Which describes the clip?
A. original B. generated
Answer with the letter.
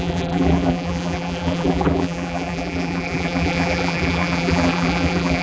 B